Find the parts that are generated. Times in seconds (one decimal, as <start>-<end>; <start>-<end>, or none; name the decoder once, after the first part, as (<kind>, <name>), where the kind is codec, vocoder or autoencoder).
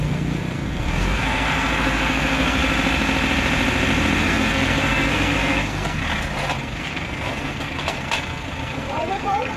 0.0-2.6 (codec, SNAC); 4.2-6.0; 6.6-9.6